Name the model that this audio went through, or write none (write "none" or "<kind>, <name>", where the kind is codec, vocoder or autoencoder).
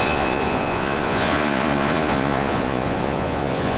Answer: vocoder, Vocos